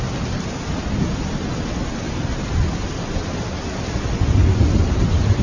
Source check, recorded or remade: recorded